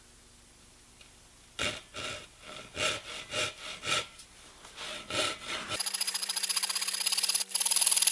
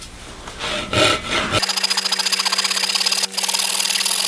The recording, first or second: second